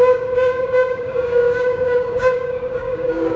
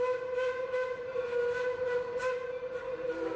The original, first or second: second